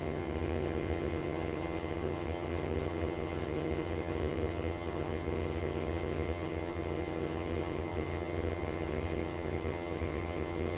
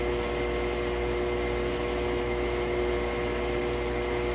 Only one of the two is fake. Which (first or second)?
first